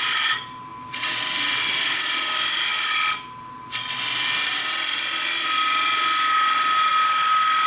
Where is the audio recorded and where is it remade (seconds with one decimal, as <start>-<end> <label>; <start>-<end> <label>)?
0.0-7.7 recorded